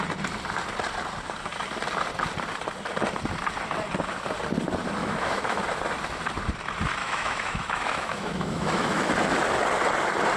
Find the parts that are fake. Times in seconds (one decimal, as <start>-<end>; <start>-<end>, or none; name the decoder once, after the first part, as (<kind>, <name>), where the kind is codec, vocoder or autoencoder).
5.0-5.6 (autoencoder, DAC-VAE); 7.0-9.1